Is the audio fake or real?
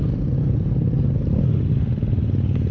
real